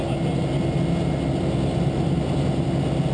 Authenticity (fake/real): real